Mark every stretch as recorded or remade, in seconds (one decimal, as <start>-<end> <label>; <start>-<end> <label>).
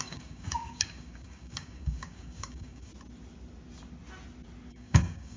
0.0-2.9 remade; 2.9-4.7 recorded; 4.7-5.4 remade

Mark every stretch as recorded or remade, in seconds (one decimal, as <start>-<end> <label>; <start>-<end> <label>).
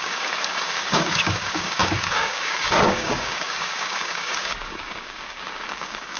0.0-6.2 remade